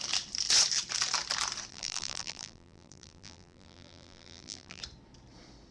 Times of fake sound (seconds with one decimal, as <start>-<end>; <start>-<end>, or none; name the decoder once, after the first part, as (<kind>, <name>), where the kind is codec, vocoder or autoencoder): 1.7-4.8 (vocoder, BigVGAN v2)